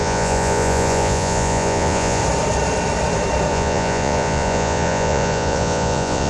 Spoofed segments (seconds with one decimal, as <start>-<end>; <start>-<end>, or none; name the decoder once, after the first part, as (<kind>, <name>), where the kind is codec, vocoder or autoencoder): 0.0-2.2 (vocoder, Vocos); 3.5-6.3